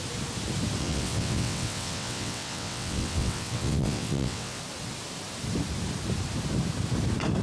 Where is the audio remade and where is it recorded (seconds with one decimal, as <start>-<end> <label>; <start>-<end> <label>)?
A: 0.0-0.8 recorded; 0.8-4.6 remade; 4.6-7.4 recorded